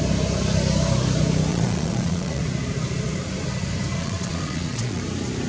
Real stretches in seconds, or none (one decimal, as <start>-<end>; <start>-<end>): 0.0-1.5; 2.4-4.0; 5.0-5.5